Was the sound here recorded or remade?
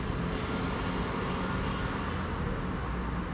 recorded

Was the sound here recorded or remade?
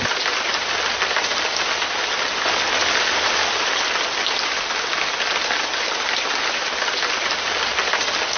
recorded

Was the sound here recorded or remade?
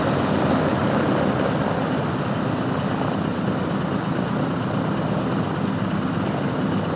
recorded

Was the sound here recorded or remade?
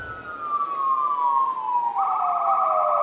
recorded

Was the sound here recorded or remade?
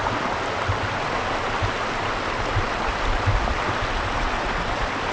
recorded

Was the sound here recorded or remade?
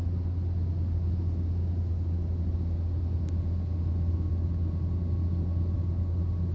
recorded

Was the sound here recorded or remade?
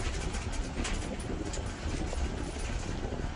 recorded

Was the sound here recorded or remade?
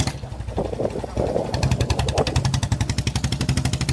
recorded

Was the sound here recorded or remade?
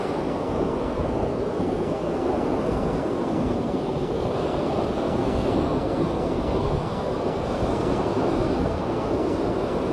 remade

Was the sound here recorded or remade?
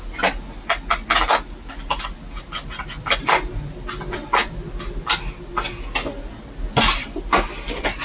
recorded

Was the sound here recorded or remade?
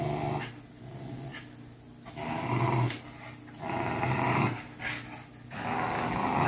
recorded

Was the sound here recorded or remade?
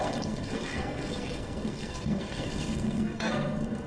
remade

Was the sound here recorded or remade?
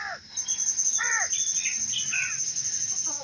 recorded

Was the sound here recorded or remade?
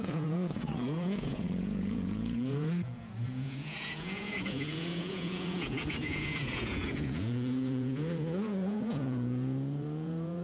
remade